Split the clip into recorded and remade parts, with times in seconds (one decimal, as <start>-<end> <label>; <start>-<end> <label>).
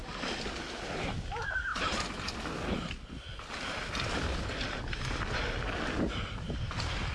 0.0-7.1 recorded